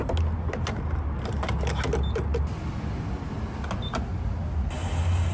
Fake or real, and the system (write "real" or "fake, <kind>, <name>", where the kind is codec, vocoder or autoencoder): real